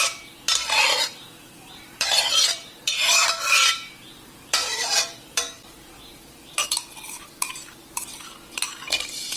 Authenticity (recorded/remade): remade